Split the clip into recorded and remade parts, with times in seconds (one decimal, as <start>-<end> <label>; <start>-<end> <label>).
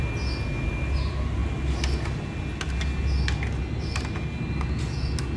0.0-5.4 recorded